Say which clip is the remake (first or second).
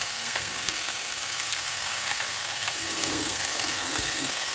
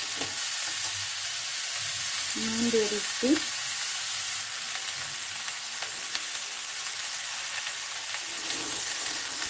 first